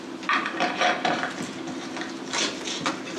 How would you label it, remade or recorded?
recorded